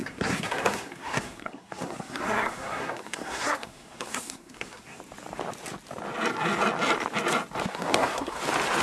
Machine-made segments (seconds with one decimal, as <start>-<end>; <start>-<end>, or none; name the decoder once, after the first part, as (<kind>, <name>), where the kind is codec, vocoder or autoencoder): 0.0-5.0 (codec, SNAC); 7.7-8.4